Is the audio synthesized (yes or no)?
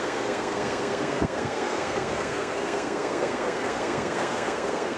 yes